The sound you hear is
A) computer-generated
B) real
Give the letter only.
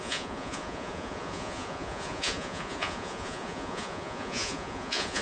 A